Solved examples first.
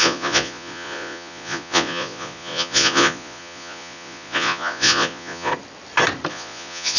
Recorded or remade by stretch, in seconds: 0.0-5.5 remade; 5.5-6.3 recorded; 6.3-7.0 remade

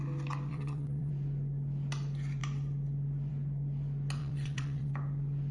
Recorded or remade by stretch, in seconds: 0.0-0.5 recorded; 0.5-1.1 remade; 1.1-4.2 recorded; 4.2-4.9 remade; 4.9-5.5 recorded

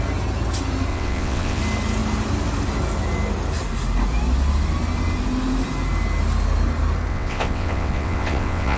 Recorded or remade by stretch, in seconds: 0.0-0.9 recorded; 0.9-1.6 remade; 1.6-7.1 recorded; 7.1-8.8 remade

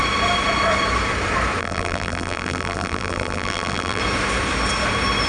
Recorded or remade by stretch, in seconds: 0.0-1.6 recorded; 1.6-4.0 remade; 4.0-5.3 recorded